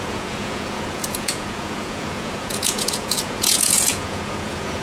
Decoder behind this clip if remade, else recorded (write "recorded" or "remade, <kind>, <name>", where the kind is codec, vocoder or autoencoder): remade, vocoder, Vocos